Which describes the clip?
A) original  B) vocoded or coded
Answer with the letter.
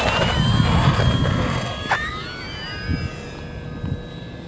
A